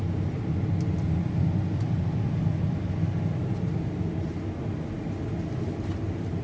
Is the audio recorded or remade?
recorded